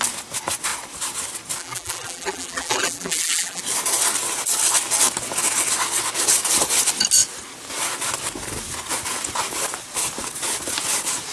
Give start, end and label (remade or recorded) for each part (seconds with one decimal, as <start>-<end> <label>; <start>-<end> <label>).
0.0-1.6 recorded; 1.6-3.6 remade; 3.6-11.3 recorded